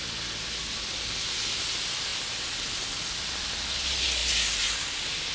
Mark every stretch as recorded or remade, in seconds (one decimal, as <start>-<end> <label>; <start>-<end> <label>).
0.0-5.3 recorded